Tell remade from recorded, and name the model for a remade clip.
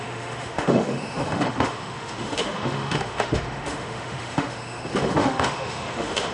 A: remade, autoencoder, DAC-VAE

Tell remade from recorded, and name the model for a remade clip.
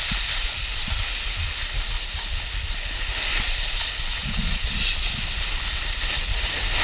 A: recorded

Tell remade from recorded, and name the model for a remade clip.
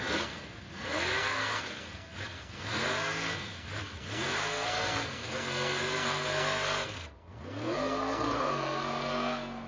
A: remade, codec, SNAC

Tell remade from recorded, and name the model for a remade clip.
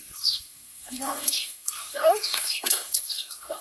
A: remade, codec, SNAC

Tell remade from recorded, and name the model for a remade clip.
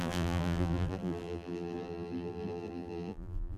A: remade, vocoder, BigVGAN v2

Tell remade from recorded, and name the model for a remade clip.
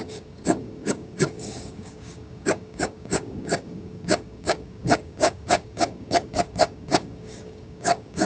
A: remade, codec, DAC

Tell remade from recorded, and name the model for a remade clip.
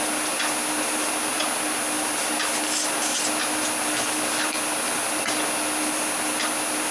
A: recorded